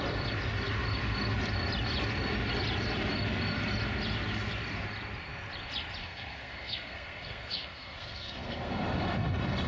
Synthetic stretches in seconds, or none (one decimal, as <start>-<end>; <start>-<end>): 6.0-8.7